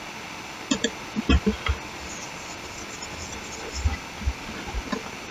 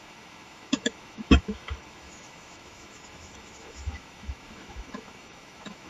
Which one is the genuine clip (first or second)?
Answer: first